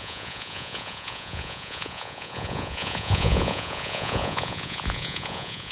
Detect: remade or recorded remade